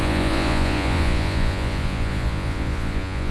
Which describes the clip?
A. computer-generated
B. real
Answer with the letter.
A